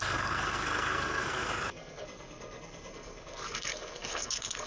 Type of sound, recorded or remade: remade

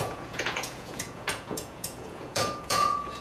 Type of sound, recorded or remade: remade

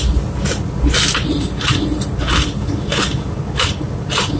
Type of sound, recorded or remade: recorded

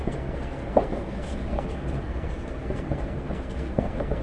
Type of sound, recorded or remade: remade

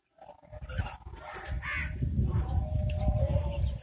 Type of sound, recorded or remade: recorded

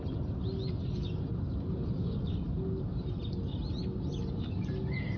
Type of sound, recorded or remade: recorded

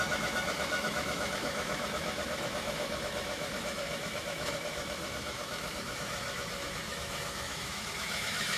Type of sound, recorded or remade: remade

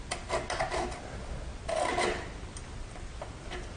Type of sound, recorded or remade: recorded